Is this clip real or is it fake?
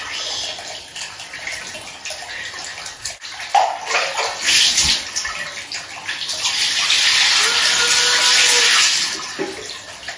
real